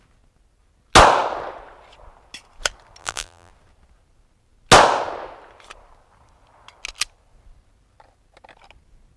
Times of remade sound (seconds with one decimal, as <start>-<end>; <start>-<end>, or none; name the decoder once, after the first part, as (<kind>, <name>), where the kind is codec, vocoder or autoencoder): 3.0-3.5 (vocoder, BigVGAN v2)